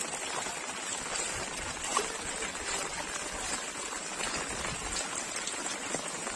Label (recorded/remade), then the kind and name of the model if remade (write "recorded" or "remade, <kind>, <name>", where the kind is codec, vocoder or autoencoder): recorded